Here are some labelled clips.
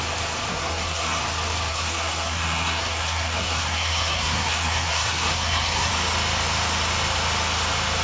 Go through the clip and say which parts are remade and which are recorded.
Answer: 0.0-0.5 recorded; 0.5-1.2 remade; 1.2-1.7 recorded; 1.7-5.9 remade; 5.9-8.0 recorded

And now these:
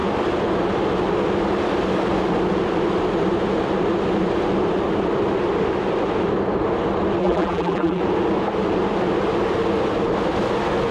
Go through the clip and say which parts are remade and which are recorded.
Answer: 0.0-7.2 recorded; 7.2-8.0 remade; 8.0-10.9 recorded

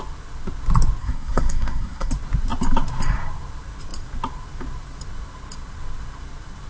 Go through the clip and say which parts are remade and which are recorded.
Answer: 0.0-1.0 recorded; 1.0-2.1 remade; 2.1-6.7 recorded

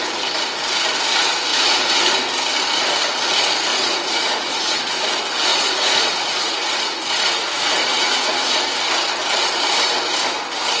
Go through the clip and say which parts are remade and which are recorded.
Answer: 0.0-1.5 recorded; 1.5-2.0 remade; 2.0-3.7 recorded; 3.7-5.0 remade; 5.0-5.5 recorded; 5.5-8.5 remade; 8.5-10.8 recorded